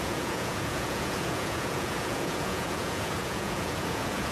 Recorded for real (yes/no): no